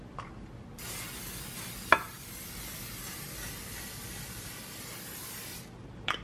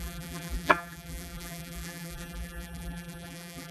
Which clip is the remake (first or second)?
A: second